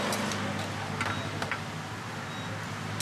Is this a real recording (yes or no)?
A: yes